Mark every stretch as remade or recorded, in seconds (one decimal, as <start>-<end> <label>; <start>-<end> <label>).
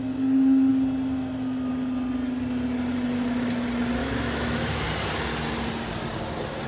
0.0-4.0 recorded; 4.0-4.8 remade; 4.8-6.7 recorded